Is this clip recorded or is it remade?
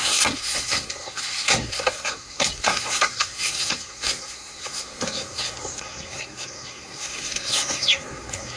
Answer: remade